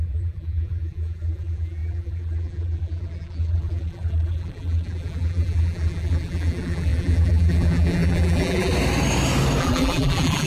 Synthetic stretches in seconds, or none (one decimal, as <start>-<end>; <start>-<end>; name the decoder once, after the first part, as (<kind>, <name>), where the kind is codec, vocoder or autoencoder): 0.0-8.7 (vocoder, BigVGAN v2); 9.6-10.5